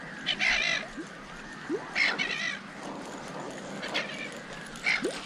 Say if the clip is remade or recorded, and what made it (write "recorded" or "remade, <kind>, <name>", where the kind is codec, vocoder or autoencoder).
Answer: recorded